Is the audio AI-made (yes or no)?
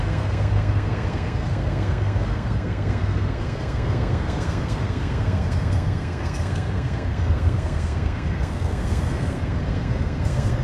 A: yes